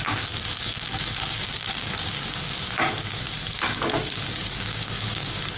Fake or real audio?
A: fake